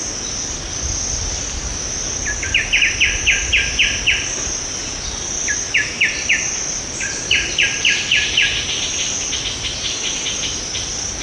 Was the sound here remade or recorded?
recorded